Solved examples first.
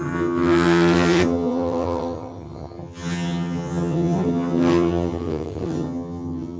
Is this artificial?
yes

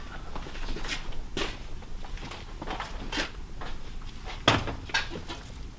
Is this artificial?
no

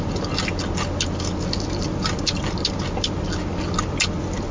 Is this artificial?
no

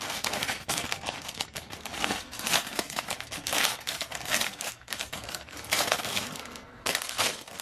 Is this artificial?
yes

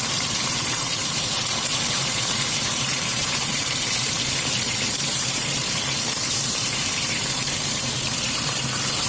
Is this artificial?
yes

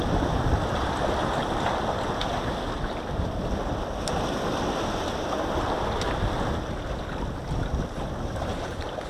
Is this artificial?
no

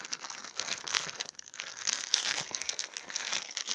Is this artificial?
yes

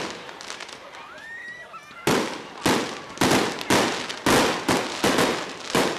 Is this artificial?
no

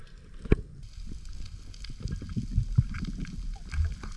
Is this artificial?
no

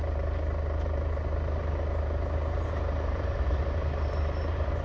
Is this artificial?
yes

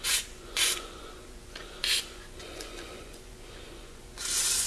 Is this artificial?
yes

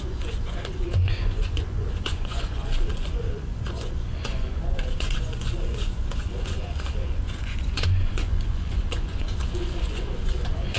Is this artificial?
yes